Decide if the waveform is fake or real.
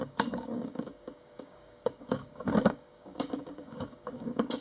fake